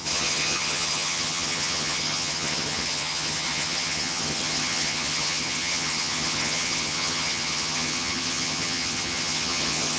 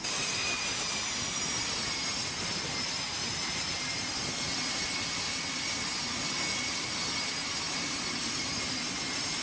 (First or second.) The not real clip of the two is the first